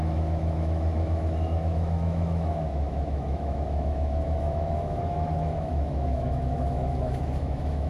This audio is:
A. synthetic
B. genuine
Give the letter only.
A